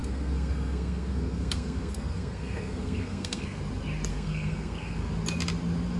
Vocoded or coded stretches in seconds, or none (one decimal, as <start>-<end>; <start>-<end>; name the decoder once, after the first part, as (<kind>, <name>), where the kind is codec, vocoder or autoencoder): 0.0-3.6 (codec, SNAC); 4.1-5.1